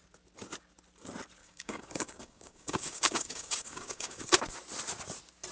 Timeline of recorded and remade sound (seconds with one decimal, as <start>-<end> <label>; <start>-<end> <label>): 0.0-1.4 recorded; 1.4-4.3 remade; 4.3-5.5 recorded